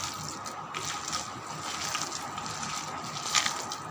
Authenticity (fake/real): real